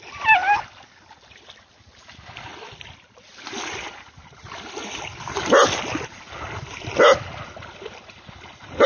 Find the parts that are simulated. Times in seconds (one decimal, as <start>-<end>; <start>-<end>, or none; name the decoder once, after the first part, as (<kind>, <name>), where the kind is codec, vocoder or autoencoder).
none